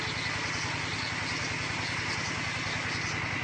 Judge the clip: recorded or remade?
recorded